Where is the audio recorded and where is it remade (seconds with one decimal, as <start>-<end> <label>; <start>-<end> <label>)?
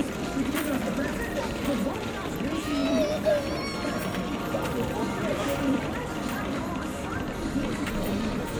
0.0-2.3 remade; 2.3-2.8 recorded; 2.8-3.5 remade; 3.5-5.3 recorded; 5.3-6.8 remade; 6.8-8.6 recorded